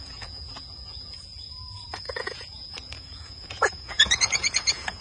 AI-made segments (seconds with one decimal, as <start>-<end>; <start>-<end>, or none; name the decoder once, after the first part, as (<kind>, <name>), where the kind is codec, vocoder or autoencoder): 0.0-5.0 (vocoder, Vocos)

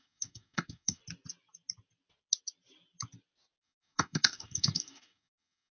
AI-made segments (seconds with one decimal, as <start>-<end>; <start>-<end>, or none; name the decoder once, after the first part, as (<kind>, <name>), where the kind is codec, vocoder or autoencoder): 0.0-1.0 (codec, DAC); 3.6-5.8